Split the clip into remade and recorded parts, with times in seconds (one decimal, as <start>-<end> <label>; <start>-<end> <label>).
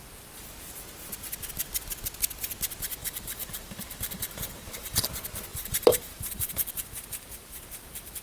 0.0-3.0 recorded; 3.0-5.1 remade; 5.1-5.5 recorded; 5.5-8.2 remade